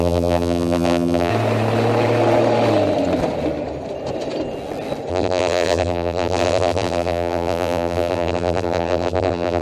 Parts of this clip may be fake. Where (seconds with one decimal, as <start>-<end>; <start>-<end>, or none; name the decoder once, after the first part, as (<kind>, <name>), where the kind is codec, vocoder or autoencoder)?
0.0-1.3 (vocoder, BigVGAN v2); 5.1-9.6